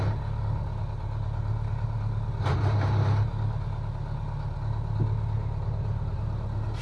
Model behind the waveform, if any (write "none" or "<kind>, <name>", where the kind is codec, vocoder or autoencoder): none